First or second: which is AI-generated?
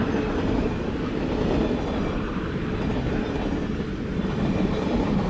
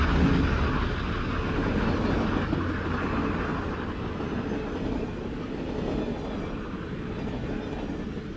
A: first